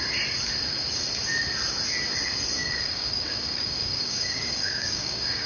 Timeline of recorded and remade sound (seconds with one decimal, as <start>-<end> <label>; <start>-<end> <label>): 0.0-2.6 recorded; 2.6-5.5 remade